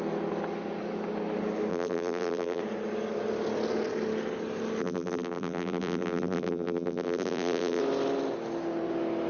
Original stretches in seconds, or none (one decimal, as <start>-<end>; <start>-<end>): 0.0-1.7; 2.6-4.8; 7.8-9.3